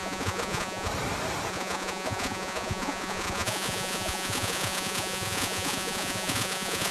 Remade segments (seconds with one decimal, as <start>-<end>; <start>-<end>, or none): 0.0-0.9; 1.5-6.9